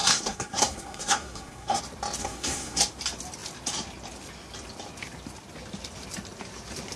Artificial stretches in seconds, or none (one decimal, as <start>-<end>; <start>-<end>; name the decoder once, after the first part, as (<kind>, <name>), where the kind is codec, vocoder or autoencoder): 0.0-1.8 (codec, SNAC); 2.2-2.8